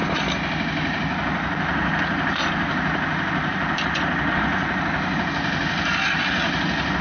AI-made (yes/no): no